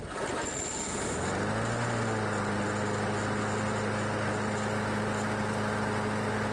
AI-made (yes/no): no